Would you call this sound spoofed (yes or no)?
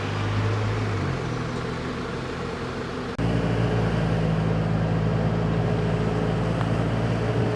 no